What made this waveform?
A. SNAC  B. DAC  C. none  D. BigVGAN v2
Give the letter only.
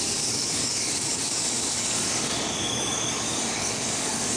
B